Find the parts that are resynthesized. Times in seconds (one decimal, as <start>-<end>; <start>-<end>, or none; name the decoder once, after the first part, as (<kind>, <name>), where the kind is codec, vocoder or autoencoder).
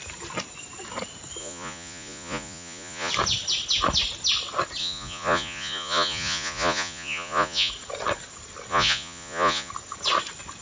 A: 1.4-3.1 (vocoder, Vocos); 4.8-7.7; 8.7-9.7